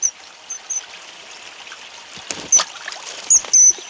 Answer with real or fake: real